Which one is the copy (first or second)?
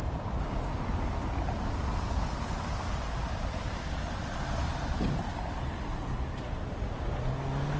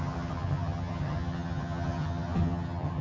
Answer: second